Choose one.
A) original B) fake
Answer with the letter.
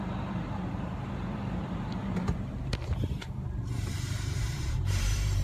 B